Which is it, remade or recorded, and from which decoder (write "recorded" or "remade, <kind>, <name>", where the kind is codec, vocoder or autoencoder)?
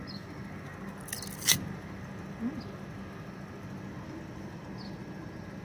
recorded